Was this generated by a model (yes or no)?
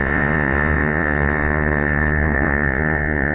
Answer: yes